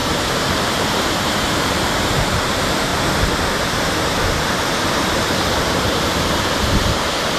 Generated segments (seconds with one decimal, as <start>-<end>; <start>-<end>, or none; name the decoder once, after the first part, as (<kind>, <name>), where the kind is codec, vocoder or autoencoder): 0.6-2.9 (vocoder, BigVGAN v2); 4.9-7.4